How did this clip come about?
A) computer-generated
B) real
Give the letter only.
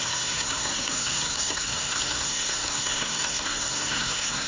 A